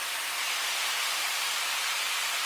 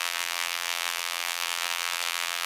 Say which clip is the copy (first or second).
second